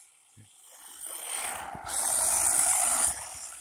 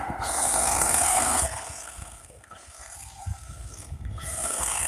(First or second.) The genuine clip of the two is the first